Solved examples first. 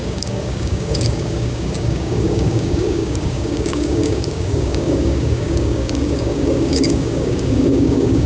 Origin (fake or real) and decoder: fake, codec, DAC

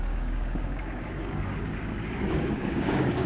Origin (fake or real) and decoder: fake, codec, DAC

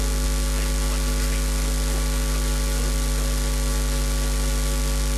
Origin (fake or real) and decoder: real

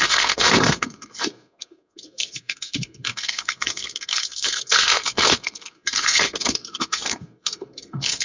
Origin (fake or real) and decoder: fake, codec, SNAC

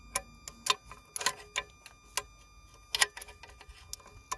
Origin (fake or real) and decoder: real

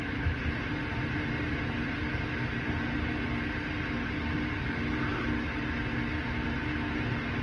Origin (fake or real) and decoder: real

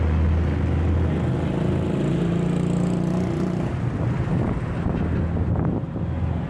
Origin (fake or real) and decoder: real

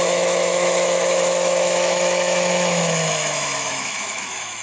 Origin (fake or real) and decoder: fake, autoencoder, DAC-VAE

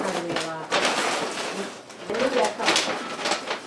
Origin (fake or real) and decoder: real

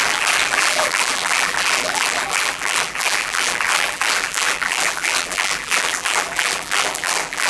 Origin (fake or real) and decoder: fake, vocoder, BigVGAN v2